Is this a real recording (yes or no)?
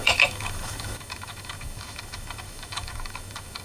no